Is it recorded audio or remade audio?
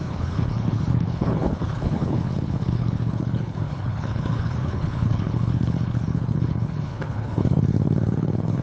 remade